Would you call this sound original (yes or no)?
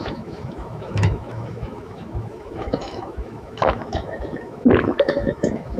no